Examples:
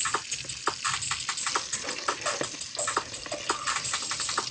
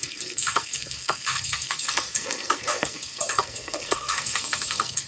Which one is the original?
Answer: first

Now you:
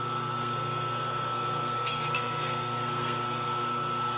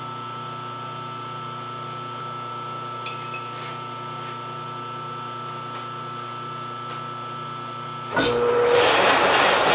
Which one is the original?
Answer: second